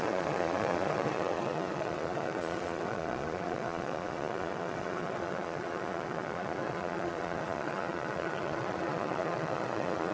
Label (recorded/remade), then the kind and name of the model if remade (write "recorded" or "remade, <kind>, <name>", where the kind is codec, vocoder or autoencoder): remade, vocoder, Vocos